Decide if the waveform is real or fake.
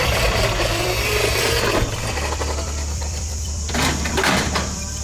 fake